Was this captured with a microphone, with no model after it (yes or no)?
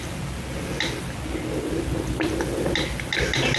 yes